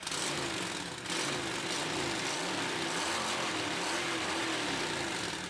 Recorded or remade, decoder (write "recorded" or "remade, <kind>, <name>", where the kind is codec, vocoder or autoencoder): recorded